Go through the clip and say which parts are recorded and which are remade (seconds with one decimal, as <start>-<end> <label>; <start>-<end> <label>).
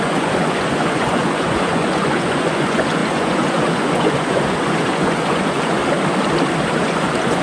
0.0-5.8 remade; 5.8-6.8 recorded; 6.8-7.4 remade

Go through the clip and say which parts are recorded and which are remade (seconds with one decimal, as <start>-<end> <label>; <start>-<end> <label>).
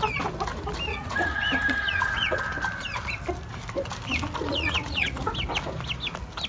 0.0-0.9 recorded; 0.9-2.4 remade; 2.4-4.5 recorded; 4.5-5.3 remade; 5.3-6.5 recorded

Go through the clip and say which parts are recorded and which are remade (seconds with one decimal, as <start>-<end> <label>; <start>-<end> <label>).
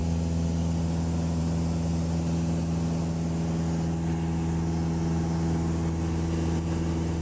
0.0-7.2 recorded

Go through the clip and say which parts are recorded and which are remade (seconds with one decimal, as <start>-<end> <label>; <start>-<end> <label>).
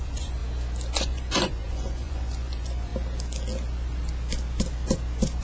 0.0-0.4 remade; 0.4-1.0 recorded; 1.0-2.9 remade; 2.9-5.4 recorded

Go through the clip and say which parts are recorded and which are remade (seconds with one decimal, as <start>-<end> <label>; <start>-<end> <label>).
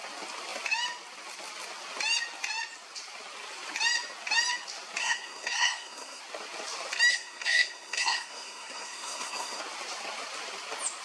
0.0-5.0 recorded; 5.0-6.2 remade; 6.2-7.1 recorded; 7.1-9.6 remade; 9.6-11.0 recorded